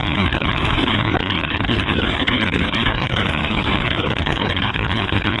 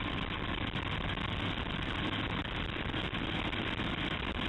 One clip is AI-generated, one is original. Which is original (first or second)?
second